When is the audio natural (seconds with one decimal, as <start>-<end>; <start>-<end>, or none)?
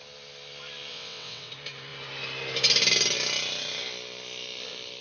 0.0-0.9; 1.5-5.0